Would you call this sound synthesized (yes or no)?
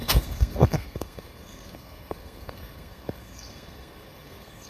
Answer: yes